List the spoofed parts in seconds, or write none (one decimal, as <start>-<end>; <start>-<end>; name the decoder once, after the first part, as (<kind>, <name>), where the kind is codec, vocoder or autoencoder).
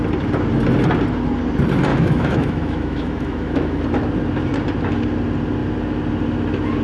1.9-3.8 (autoencoder, DAC-VAE)